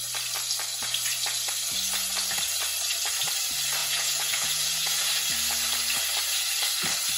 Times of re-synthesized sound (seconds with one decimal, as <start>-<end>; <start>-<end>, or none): 3.8-5.1